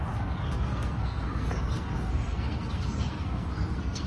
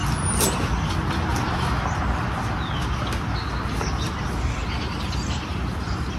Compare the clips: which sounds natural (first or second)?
second